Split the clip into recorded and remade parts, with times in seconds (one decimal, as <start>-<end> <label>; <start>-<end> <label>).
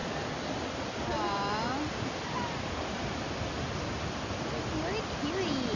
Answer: 0.0-5.8 recorded